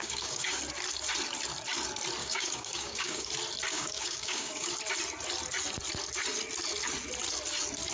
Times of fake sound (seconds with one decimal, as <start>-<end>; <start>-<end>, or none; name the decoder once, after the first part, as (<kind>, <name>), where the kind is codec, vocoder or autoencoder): 0.0-0.6 (codec, DAC); 2.2-3.3; 3.7-4.7